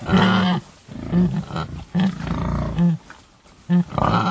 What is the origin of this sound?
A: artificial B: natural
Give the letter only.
B